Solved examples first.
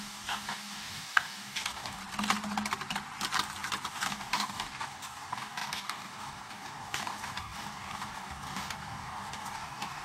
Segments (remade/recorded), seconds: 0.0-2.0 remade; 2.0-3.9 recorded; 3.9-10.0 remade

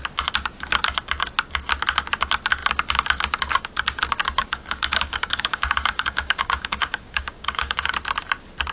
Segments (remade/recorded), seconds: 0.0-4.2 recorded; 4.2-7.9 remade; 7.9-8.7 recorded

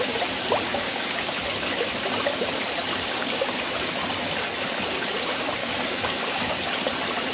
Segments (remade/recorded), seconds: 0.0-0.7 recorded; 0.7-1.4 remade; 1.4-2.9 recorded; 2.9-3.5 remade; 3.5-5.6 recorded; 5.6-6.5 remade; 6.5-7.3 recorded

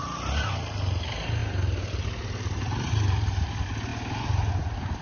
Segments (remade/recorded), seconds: 0.0-5.0 recorded

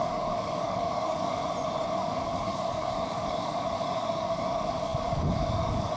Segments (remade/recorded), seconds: 0.0-1.4 remade; 1.4-1.9 recorded; 1.9-6.0 remade

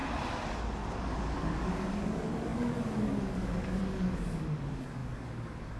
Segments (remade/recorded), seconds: 0.0-0.9 recorded; 0.9-5.8 remade